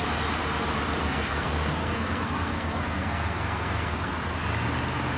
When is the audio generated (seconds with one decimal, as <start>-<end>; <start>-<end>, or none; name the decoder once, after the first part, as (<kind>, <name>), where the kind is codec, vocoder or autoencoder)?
1.0-4.1 (codec, SNAC)